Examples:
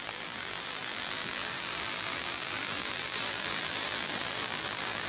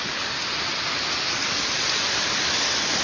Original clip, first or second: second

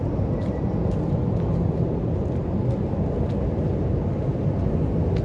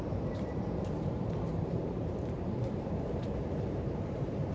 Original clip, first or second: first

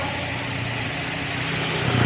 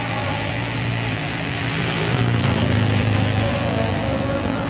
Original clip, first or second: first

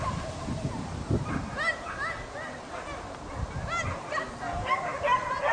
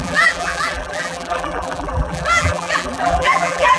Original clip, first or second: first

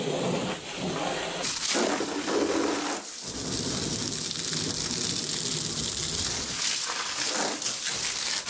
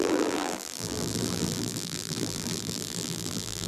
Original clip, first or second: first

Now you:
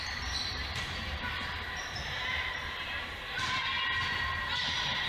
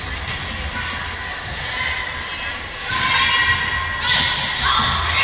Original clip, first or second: second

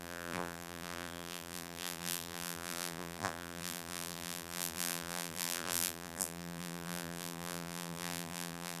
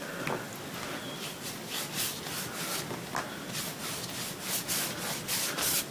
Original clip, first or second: second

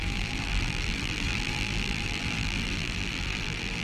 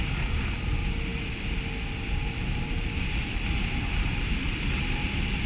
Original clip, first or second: second